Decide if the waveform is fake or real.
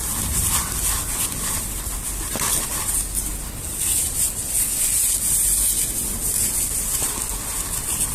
real